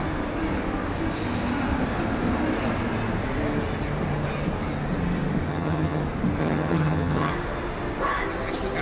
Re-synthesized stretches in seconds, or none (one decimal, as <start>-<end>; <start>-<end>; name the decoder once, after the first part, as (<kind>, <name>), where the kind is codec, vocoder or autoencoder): 5.5-6.0 (vocoder, HiFi-GAN); 6.4-7.3